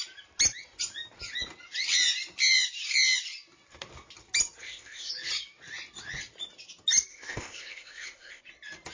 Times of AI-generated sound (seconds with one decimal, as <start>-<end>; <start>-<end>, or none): 4.6-5.1; 7.1-8.4